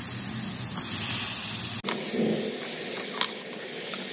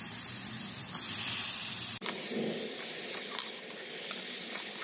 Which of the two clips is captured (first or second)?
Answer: first